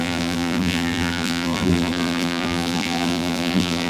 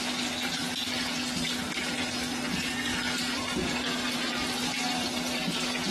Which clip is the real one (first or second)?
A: second